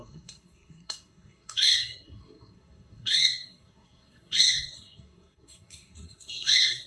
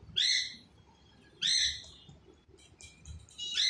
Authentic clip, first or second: second